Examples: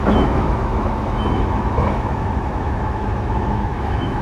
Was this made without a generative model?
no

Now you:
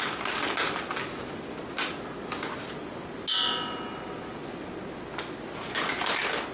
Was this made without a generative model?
yes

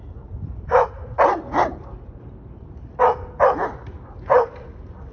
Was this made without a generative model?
yes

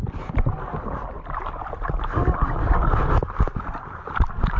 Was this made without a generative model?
yes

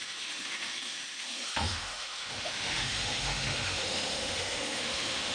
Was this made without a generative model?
no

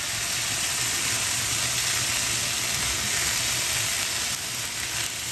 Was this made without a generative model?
yes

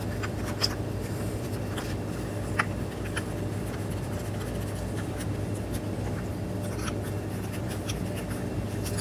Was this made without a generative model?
yes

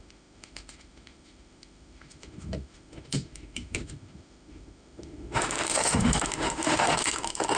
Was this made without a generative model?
no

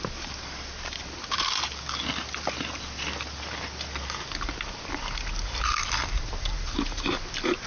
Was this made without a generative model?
yes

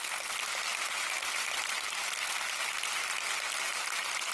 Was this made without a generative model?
yes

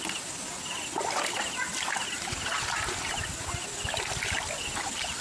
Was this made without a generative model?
yes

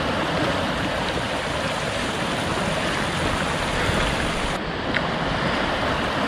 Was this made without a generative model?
yes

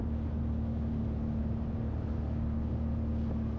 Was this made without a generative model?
yes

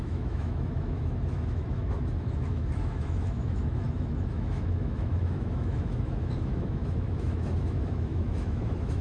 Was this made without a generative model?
no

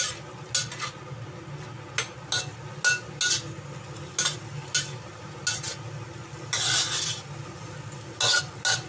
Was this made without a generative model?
yes